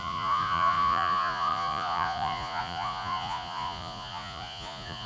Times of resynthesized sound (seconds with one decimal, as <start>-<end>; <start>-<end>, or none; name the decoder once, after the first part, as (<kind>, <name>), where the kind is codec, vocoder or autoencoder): 0.0-5.1 (vocoder, Vocos)